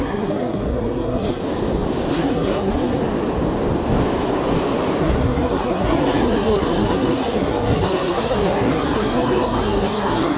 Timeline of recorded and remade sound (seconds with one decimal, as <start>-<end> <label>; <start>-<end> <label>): 0.0-1.4 remade; 1.4-2.1 recorded; 2.1-3.0 remade; 3.0-5.0 recorded; 5.0-10.4 remade